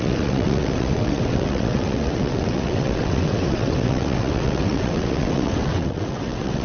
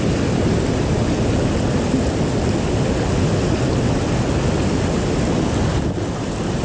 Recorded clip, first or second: second